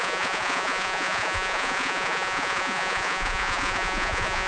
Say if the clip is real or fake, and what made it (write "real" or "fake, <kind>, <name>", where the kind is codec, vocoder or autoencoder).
fake, vocoder, Vocos